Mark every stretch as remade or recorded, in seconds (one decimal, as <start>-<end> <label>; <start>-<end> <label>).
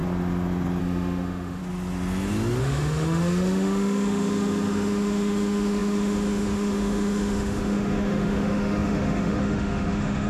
0.0-0.8 recorded; 0.8-1.6 remade; 1.6-2.6 recorded; 2.6-10.3 remade